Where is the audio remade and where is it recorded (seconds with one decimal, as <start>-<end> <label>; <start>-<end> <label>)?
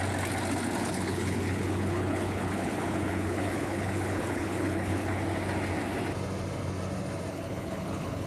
0.0-0.8 recorded; 0.8-5.2 remade; 5.2-7.3 recorded; 7.3-8.3 remade